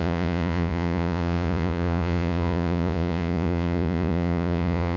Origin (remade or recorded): remade